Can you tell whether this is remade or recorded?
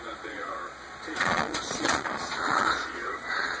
remade